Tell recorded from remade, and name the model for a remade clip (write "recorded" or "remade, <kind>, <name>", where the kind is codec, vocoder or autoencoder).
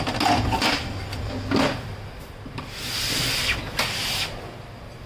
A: recorded